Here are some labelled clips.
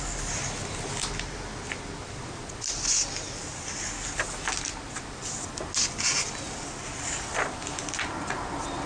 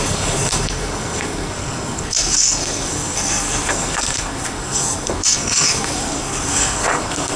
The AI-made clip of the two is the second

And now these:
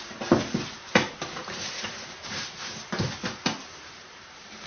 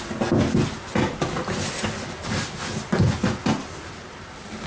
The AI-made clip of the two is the first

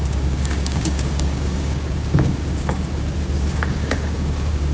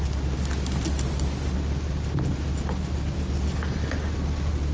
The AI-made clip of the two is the first